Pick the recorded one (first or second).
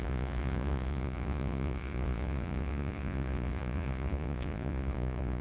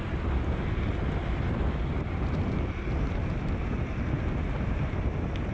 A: second